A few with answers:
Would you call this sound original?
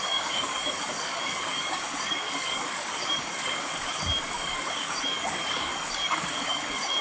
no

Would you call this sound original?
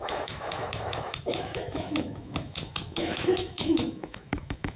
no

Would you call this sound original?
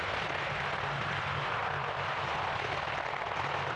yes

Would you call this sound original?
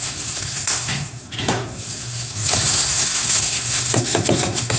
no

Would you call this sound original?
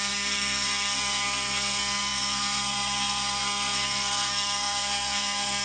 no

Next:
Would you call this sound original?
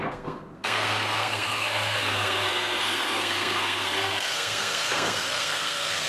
no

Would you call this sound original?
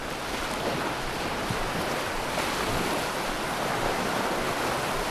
yes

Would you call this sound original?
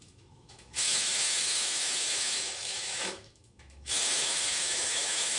no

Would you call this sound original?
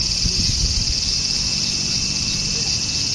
yes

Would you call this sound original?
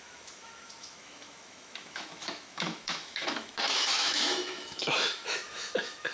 no